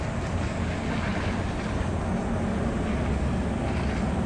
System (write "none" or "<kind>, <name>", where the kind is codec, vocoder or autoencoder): none